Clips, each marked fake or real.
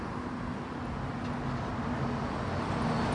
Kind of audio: real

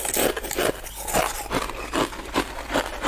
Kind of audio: real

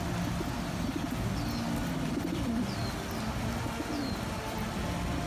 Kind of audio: real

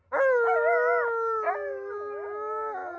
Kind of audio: real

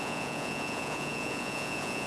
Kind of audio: fake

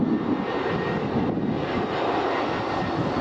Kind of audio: real